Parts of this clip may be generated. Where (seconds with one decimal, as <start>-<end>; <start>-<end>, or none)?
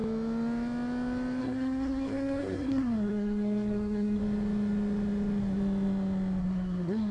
1.4-4.2; 6.4-7.1